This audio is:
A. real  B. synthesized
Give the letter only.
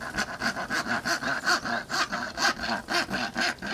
A